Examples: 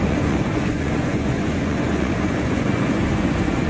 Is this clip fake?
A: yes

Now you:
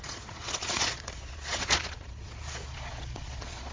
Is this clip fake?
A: yes